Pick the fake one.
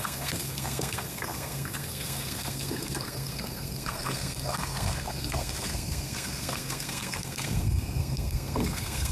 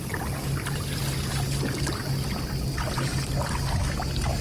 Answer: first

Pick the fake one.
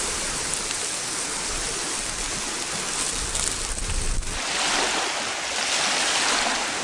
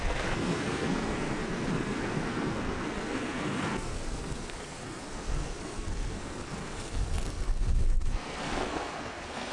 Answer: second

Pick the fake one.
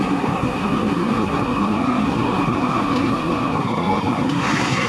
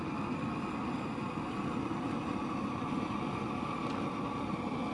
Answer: first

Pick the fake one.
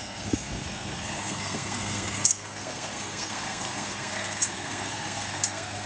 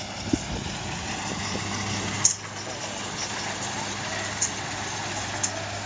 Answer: first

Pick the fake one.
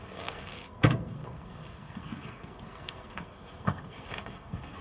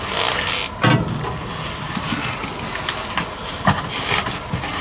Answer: first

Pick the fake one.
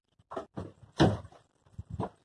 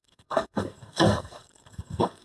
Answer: second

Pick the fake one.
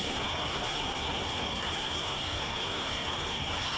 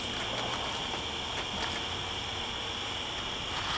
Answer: first